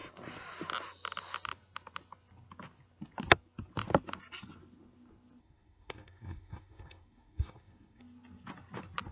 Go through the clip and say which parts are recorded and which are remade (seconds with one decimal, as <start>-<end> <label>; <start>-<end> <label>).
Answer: 0.0-5.4 recorded; 5.4-8.0 remade; 8.0-9.1 recorded